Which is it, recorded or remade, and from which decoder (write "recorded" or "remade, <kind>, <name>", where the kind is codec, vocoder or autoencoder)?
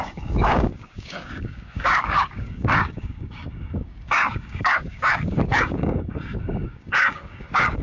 remade, codec, DAC